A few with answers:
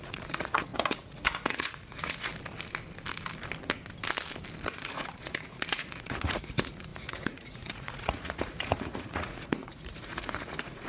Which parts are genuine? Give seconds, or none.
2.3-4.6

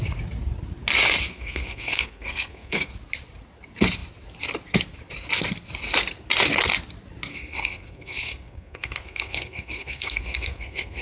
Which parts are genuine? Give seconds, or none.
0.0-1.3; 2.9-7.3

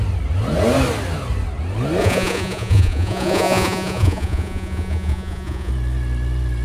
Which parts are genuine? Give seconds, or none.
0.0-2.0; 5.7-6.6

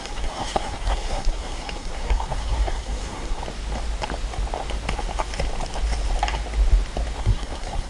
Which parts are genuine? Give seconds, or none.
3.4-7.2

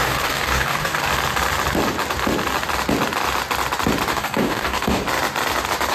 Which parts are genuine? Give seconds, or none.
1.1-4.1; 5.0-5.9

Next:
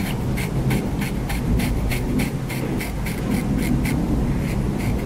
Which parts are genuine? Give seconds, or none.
0.0-5.1